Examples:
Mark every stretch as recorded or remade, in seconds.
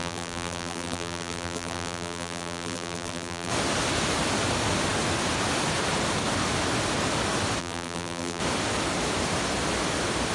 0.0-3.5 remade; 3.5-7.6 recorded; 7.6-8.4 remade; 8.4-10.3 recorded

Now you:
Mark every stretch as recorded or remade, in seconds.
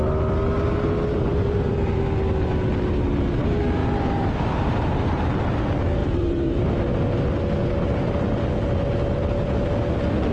0.0-1.3 recorded; 1.3-2.0 remade; 2.0-3.8 recorded; 3.8-5.5 remade; 5.5-6.0 recorded; 6.0-6.6 remade; 6.6-10.3 recorded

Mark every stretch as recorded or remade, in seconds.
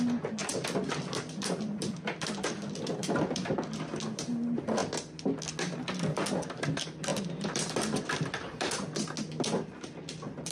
0.0-0.4 recorded; 0.4-3.5 remade; 3.5-7.1 recorded; 7.1-8.6 remade; 8.6-10.5 recorded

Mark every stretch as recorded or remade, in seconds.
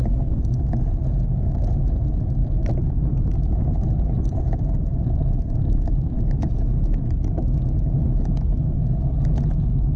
0.0-2.4 recorded; 2.4-2.9 remade; 2.9-4.9 recorded; 4.9-6.5 remade; 6.5-10.0 recorded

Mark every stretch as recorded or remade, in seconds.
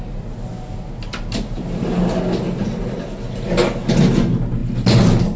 0.0-5.4 recorded